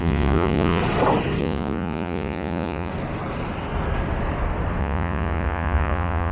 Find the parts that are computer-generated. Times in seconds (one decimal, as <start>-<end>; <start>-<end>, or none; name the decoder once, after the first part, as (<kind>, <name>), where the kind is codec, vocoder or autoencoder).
0.0-0.8 (vocoder, Vocos); 1.4-2.9; 4.8-6.3